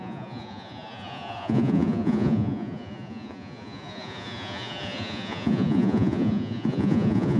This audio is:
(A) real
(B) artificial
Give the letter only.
B